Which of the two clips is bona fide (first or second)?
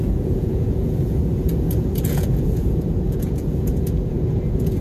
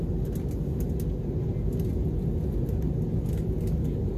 second